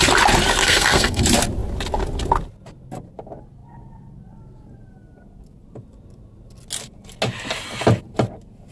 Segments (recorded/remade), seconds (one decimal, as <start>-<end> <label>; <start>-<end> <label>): 0.0-0.6 recorded; 0.6-1.2 remade; 1.2-8.7 recorded